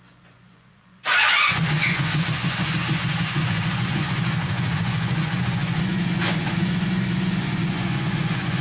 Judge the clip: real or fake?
fake